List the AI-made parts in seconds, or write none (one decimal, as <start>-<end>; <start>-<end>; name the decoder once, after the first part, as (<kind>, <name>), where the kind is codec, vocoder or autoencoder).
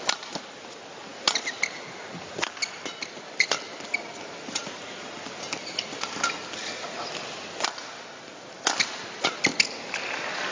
none